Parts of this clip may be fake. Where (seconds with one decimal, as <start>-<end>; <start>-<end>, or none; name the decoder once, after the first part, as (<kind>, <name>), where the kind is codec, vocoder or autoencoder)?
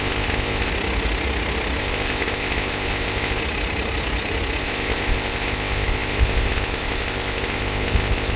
0.0-0.7 (codec, ZipCodec); 1.8-3.4; 4.6-8.4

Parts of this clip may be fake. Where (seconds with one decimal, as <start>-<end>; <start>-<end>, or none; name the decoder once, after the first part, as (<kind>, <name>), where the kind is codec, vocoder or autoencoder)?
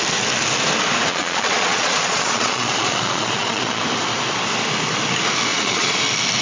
1.1-3.8 (vocoder, Vocos); 5.5-6.0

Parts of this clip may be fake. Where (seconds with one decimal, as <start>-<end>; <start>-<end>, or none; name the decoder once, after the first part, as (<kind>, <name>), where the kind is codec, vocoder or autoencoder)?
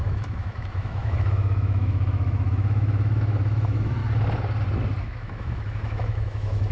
0.0-4.0 (autoencoder, DAC-VAE); 5.0-6.7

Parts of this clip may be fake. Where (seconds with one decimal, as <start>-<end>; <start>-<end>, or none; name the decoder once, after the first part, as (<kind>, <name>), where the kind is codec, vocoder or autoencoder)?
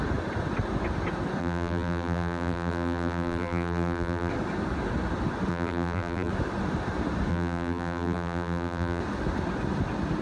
1.4-4.3 (vocoder, BigVGAN v2); 5.5-6.3; 7.3-9.0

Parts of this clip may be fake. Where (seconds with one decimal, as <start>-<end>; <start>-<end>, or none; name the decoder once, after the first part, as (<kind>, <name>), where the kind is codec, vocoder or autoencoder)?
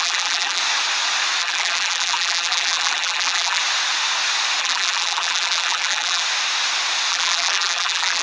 0.0-0.6 (vocoder, BigVGAN v2); 1.4-3.6; 4.6-6.2; 7.1-8.2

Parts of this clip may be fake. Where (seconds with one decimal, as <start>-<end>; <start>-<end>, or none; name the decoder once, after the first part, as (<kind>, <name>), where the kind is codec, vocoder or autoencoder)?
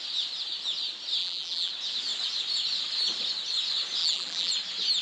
1.2-1.7 (vocoder, BigVGAN v2); 4.0-4.5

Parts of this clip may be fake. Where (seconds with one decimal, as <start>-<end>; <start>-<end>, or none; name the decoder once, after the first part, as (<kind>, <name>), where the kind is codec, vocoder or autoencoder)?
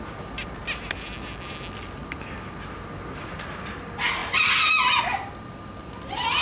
none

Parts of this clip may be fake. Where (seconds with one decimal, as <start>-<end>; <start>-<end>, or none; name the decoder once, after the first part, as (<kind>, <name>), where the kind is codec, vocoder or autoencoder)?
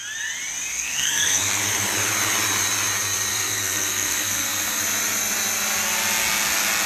0.7-1.6 (codec, SNAC); 3.3-4.8